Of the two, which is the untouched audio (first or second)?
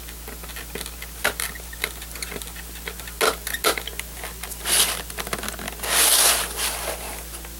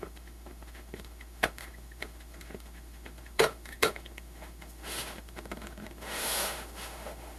first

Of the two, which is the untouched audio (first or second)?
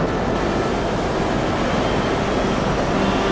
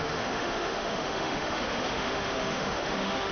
first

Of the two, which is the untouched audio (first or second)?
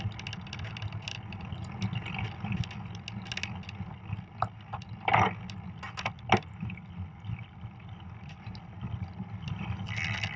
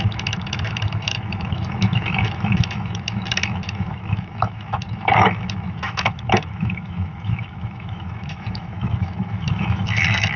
first